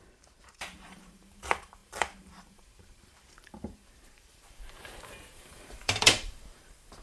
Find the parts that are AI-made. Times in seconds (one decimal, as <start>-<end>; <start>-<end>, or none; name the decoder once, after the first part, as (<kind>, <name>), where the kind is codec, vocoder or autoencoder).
0.0-7.0 (vocoder, BigVGAN v2)